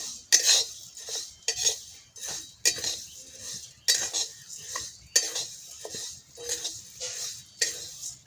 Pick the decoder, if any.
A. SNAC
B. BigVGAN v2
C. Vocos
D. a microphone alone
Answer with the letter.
D